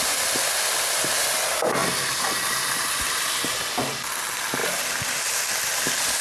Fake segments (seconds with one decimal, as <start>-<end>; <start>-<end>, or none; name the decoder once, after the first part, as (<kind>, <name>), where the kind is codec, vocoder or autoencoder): 1.8-4.1 (vocoder, BigVGAN v2)